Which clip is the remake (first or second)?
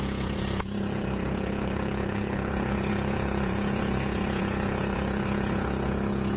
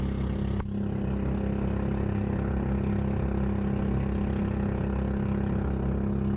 first